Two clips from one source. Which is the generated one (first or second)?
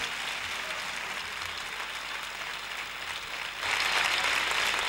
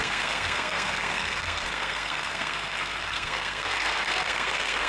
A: second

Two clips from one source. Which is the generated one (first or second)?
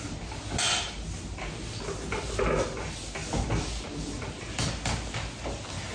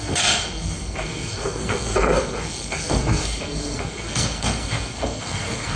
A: second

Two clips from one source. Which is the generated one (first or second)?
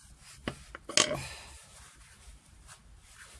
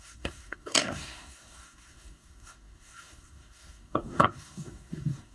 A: second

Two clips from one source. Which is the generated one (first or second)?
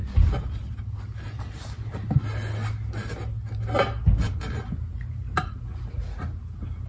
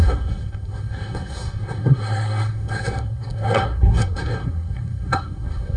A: second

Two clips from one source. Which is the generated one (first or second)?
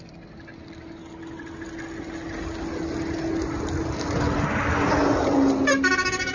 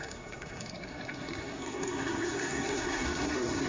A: second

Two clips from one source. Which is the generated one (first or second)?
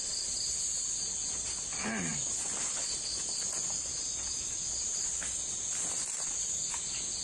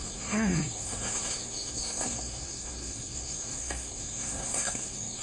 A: second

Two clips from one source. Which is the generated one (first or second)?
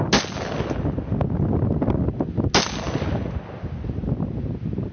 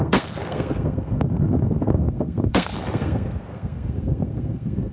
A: second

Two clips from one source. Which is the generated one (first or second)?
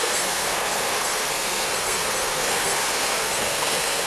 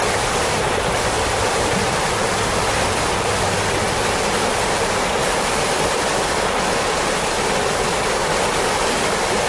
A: first